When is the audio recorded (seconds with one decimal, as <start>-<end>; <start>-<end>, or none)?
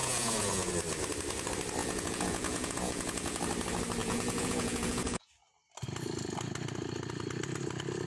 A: 0.7-1.8; 3.4-4.0; 5.3-8.1